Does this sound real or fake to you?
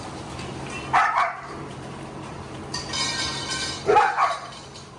fake